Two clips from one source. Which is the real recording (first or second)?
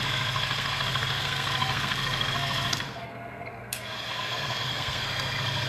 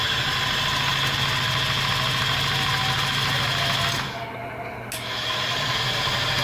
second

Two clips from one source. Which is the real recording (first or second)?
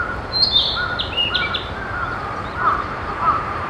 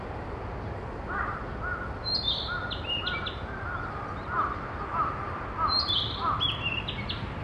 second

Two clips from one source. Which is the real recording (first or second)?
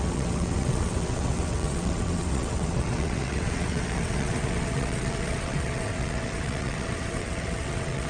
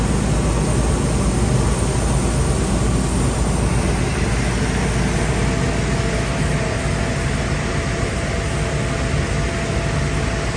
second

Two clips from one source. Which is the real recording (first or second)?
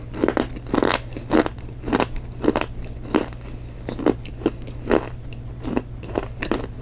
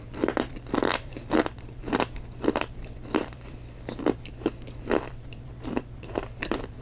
first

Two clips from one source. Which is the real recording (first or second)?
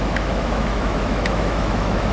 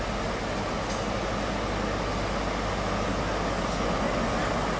second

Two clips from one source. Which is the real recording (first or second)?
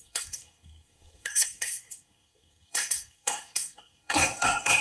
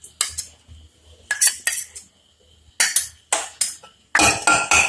second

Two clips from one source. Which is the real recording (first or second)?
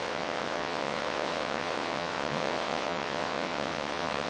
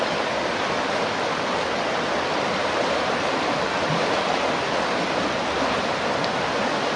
second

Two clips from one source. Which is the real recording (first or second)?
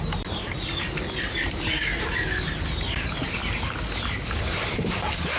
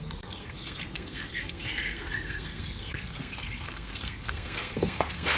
first